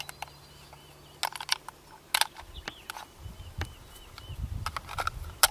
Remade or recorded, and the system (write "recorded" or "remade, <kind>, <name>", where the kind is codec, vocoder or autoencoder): recorded